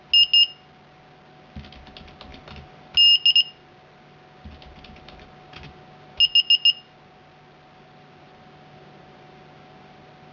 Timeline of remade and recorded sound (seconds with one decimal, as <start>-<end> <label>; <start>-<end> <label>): 0.0-10.3 recorded